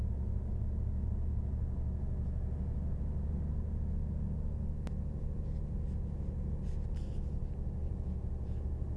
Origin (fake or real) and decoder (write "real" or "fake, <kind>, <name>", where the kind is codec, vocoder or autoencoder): real